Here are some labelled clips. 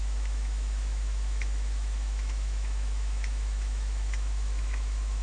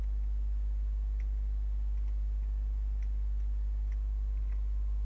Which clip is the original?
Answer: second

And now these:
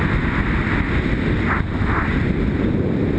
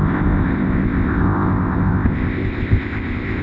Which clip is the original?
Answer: first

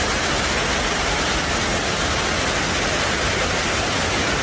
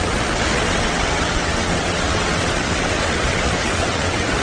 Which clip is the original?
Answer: first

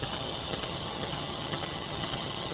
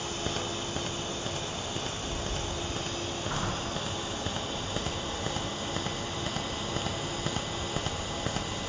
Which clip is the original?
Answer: second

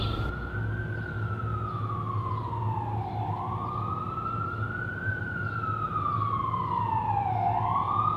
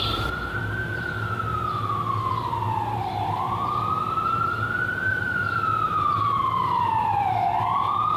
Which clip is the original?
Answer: first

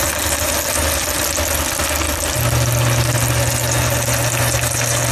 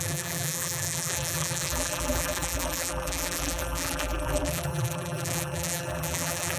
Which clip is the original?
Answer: first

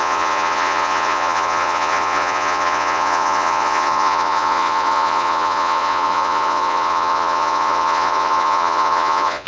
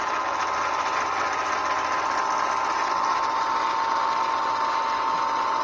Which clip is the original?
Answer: second